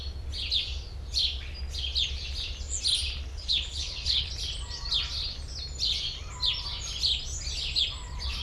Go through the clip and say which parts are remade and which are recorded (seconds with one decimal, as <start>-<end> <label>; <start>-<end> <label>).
0.0-3.3 recorded; 3.3-4.3 remade; 4.3-8.4 recorded